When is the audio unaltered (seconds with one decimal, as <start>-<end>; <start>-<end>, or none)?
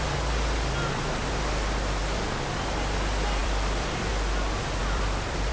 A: 0.0-1.2; 2.0-3.4; 4.1-4.8